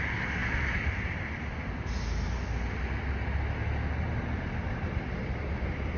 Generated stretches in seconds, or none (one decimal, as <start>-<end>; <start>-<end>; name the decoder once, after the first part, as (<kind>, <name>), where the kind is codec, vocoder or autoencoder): none